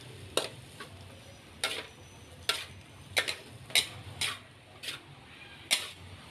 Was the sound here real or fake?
real